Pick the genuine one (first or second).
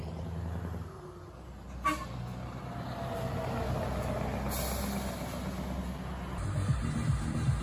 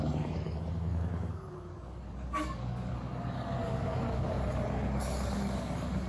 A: first